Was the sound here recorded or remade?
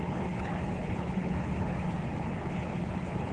remade